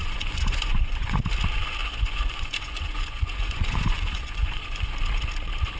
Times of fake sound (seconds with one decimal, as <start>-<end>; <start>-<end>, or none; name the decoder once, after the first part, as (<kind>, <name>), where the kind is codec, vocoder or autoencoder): 0.0-1.2 (vocoder, Vocos); 1.8-4.9